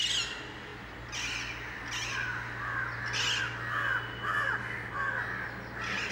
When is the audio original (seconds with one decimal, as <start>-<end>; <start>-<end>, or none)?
0.0-6.1